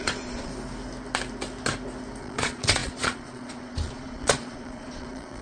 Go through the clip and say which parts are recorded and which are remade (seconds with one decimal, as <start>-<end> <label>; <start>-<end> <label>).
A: 0.0-0.5 remade; 0.5-2.2 recorded; 2.2-5.4 remade